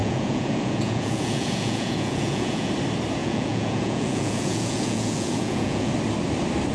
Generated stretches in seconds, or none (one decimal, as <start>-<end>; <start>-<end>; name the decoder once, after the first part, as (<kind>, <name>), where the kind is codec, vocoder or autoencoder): 0.0-2.7 (vocoder, Vocos); 3.2-5.9